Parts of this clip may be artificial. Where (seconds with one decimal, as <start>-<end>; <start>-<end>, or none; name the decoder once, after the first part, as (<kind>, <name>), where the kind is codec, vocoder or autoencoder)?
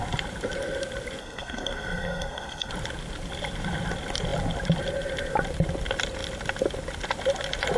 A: 1.2-2.7 (codec, SNAC)